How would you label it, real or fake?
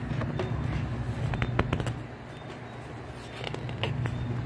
real